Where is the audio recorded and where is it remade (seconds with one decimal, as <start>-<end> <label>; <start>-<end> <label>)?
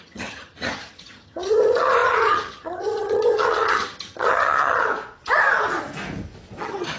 0.0-4.9 remade; 4.9-6.6 recorded; 6.6-7.0 remade